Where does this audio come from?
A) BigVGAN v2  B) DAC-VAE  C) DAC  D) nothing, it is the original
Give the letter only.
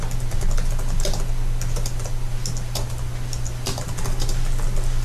D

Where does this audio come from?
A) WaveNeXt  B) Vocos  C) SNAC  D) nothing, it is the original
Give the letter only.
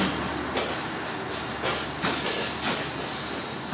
D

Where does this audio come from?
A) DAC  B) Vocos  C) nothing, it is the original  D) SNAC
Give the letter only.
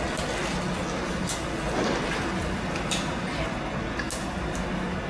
C